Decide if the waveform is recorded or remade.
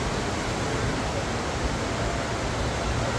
recorded